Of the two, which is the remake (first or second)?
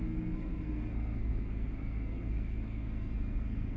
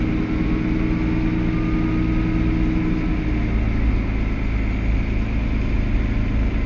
first